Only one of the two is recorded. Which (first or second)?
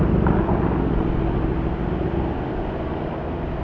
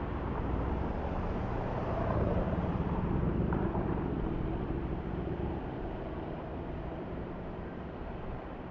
first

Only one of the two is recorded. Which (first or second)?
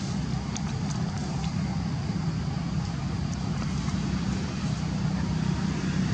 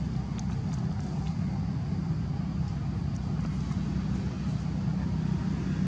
second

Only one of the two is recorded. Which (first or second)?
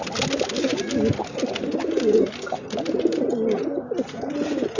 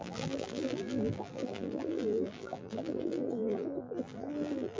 first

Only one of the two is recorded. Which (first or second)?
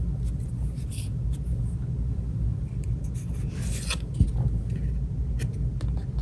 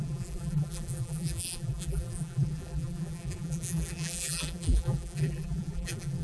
first